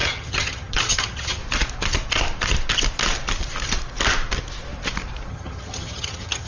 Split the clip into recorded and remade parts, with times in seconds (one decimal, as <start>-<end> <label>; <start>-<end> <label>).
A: 0.0-1.4 remade; 1.4-5.3 recorded; 5.3-6.5 remade

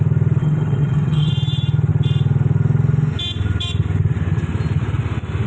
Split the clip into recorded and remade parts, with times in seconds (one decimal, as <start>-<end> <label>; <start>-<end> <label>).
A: 0.0-0.4 recorded; 0.4-1.3 remade; 1.3-5.5 recorded

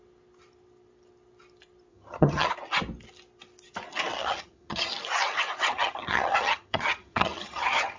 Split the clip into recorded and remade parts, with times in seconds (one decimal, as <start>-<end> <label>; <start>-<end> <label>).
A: 0.0-1.9 recorded; 1.9-2.5 remade; 2.5-4.1 recorded; 4.1-4.9 remade; 4.9-5.7 recorded; 5.7-8.0 remade

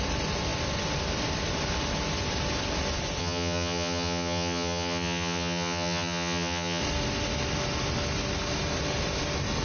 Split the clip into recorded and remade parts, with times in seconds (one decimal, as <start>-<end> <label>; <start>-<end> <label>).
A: 0.0-3.2 recorded; 3.2-6.8 remade; 6.8-9.6 recorded

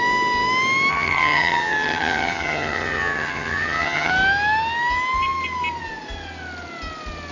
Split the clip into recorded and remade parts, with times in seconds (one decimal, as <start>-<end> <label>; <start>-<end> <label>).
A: 0.0-0.9 recorded; 0.9-4.1 remade; 4.1-7.3 recorded

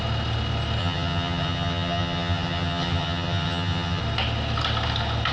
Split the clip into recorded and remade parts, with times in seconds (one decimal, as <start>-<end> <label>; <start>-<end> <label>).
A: 0.0-0.8 recorded; 0.8-4.0 remade; 4.0-5.3 recorded